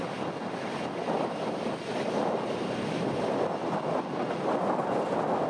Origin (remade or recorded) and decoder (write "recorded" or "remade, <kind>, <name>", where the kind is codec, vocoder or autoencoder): recorded